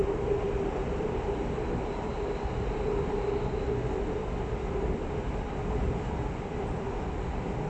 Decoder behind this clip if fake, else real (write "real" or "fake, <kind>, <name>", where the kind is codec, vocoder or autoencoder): real